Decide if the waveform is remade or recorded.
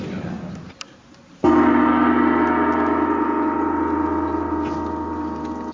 recorded